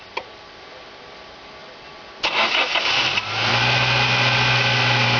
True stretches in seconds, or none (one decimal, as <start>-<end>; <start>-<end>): 0.0-5.2